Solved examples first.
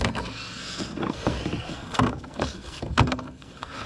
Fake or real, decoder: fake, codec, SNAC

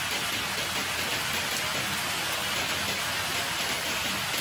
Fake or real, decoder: real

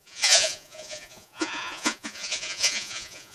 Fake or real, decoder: fake, vocoder, Vocos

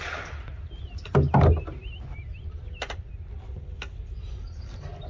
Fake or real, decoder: real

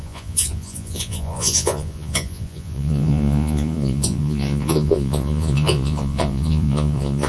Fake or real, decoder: fake, vocoder, Vocos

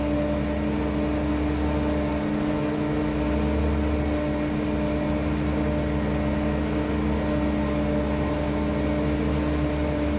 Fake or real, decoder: real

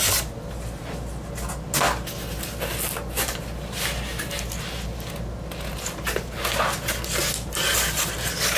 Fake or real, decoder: real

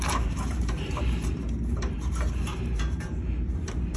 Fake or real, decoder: fake, vocoder, BigVGAN v2